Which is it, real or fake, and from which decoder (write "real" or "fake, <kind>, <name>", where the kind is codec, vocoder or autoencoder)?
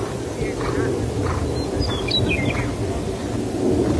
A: real